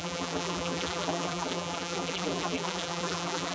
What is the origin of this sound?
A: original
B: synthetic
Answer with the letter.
B